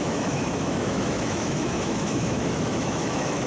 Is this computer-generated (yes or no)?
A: yes